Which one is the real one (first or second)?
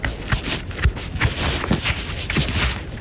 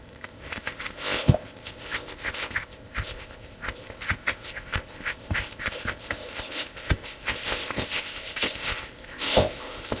first